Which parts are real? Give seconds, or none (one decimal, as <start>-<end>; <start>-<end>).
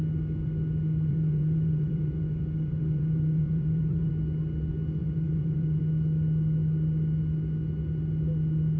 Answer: 0.0-1.1; 4.1-5.0; 5.8-8.8